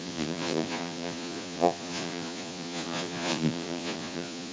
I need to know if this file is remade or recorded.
remade